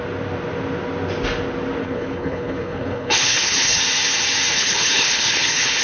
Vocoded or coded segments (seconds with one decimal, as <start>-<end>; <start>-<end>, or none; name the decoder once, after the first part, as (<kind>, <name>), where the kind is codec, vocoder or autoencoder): 1.8-3.8 (codec, HILCodec); 4.5-5.8